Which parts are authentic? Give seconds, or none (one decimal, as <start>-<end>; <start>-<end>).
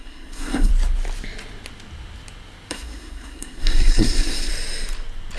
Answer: 0.7-2.7; 4.5-5.4